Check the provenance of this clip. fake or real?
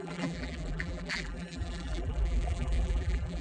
fake